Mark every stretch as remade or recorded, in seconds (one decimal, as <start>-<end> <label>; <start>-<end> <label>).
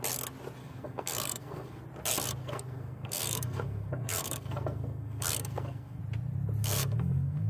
0.0-0.6 recorded; 0.6-1.8 remade; 1.8-2.4 recorded; 2.4-6.0 remade; 6.0-6.6 recorded; 6.6-7.5 remade